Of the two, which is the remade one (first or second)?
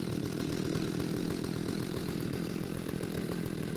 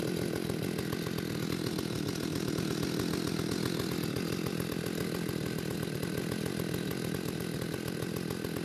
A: first